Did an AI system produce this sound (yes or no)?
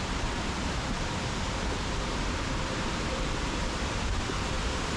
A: yes